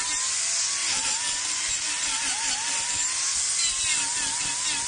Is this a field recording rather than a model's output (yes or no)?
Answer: yes